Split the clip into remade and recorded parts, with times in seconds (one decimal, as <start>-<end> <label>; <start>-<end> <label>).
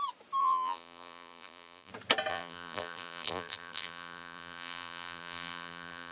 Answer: 0.0-0.4 recorded; 0.4-1.9 remade; 1.9-2.3 recorded; 2.3-6.1 remade